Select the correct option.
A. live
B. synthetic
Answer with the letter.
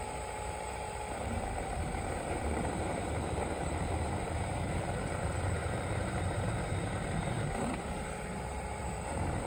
B